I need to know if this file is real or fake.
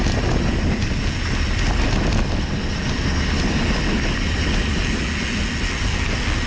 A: real